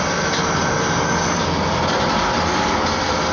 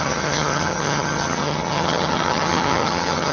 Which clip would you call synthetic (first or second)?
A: second